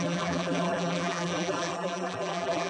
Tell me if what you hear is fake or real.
fake